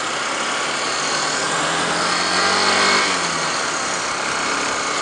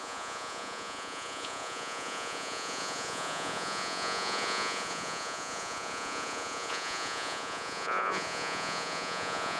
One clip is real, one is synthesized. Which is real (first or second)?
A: first